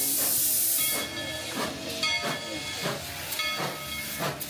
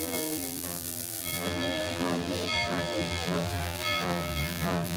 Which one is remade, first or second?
second